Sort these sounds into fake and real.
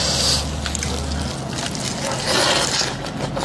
real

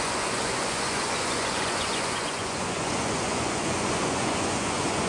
fake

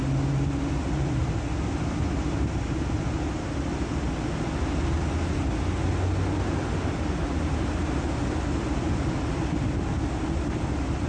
real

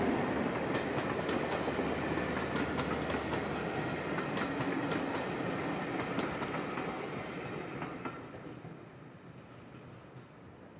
real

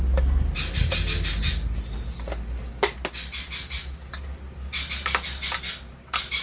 real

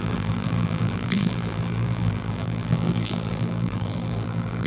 fake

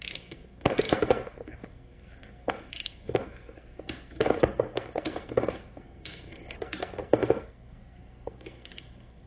fake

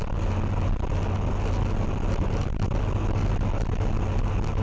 real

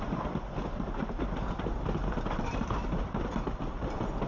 real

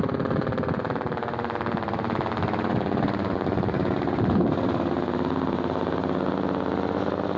real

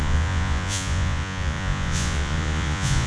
fake